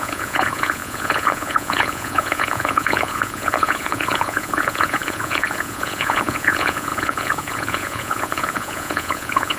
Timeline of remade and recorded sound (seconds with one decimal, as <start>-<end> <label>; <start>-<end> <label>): 0.0-9.6 remade